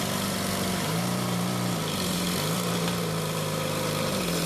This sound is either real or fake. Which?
fake